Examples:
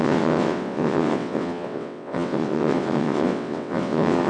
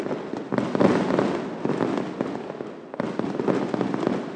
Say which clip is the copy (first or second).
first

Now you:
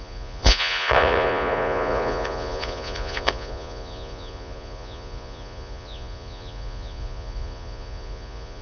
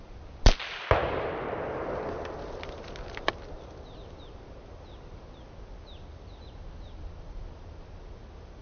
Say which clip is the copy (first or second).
first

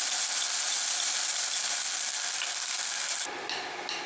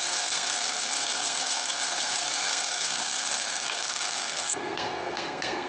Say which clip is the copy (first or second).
second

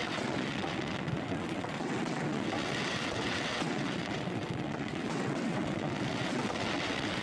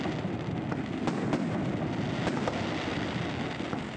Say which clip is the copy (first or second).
first